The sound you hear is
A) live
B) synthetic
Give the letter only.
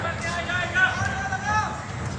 A